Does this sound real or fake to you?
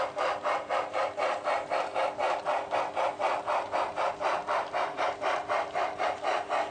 real